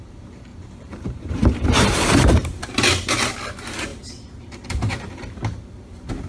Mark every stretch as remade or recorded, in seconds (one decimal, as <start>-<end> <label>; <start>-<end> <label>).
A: 0.0-0.5 recorded; 0.5-2.6 remade; 2.6-6.3 recorded